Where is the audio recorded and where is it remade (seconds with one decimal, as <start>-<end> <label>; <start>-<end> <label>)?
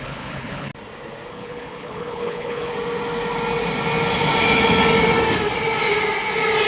0.0-0.7 remade; 0.7-1.3 recorded; 1.3-2.7 remade; 2.7-6.7 recorded